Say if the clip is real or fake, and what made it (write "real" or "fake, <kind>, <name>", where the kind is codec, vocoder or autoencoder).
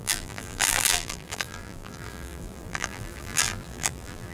fake, vocoder, BigVGAN v2